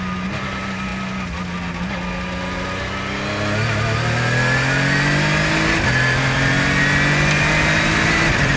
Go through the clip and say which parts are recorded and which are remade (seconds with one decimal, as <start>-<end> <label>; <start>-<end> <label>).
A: 0.0-8.6 recorded